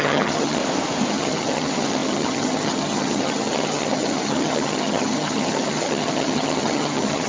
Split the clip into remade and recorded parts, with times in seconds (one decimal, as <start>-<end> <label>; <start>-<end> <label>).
0.0-0.6 remade; 0.6-1.1 recorded; 1.1-7.3 remade